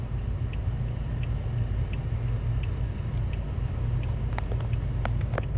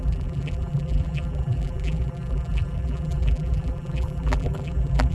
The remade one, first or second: second